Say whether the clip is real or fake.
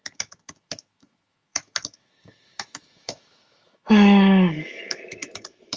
fake